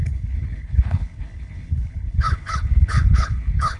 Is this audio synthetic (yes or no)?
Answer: yes